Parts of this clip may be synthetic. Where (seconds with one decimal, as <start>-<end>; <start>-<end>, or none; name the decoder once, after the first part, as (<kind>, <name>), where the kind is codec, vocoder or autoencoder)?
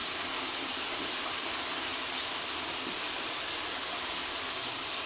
none